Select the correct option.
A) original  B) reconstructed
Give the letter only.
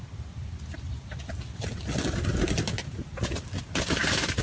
A